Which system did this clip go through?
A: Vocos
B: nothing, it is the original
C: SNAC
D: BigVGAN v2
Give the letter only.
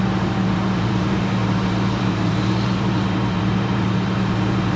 D